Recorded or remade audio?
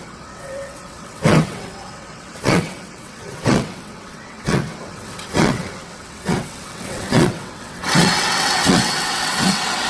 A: remade